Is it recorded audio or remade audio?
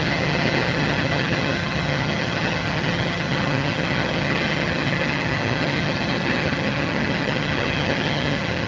remade